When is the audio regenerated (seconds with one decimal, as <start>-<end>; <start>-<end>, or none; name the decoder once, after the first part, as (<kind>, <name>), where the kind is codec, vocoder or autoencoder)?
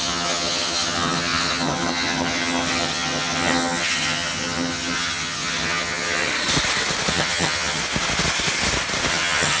0.0-6.3 (vocoder, HiFi-GAN); 7.1-7.8; 9.1-9.6